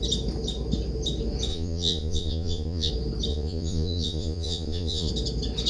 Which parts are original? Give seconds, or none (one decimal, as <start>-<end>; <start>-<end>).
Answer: 0.0-1.5; 2.9-3.3; 5.1-5.7